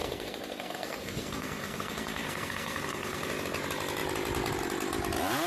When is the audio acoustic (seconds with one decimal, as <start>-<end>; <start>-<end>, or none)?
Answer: 3.3-5.5